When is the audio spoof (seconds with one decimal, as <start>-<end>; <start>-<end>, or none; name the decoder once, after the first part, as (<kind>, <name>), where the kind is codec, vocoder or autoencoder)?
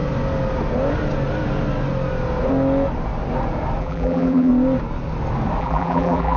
3.8-4.5 (vocoder, BigVGAN v2); 5.6-6.4